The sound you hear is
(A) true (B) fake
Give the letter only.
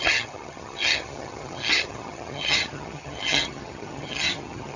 B